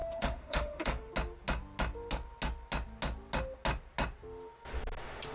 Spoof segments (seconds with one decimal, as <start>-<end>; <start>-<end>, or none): 0.0-1.1